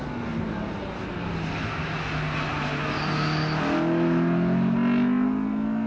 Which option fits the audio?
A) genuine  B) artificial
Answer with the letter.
A